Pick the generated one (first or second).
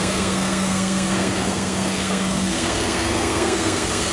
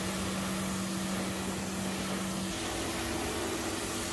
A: first